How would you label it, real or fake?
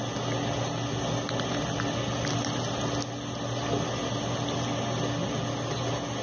real